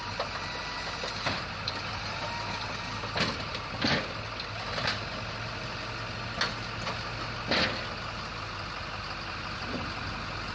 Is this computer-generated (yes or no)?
no